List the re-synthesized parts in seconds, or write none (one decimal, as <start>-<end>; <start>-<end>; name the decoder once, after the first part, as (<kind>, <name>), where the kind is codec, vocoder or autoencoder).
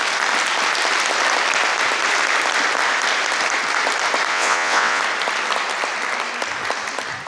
4.3-5.0 (vocoder, WaveNeXt)